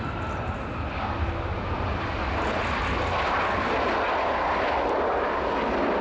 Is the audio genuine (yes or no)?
yes